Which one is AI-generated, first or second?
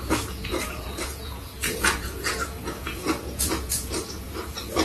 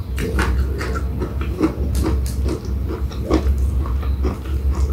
first